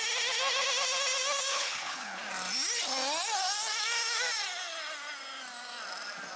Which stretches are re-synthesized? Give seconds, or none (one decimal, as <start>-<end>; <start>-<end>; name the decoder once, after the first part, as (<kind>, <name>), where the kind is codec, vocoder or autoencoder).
1.5-2.2 (codec, HILCodec)